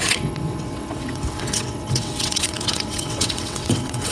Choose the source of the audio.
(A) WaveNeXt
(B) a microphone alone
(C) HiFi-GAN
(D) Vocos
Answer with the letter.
A